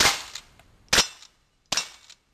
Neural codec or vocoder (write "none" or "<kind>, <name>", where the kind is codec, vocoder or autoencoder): none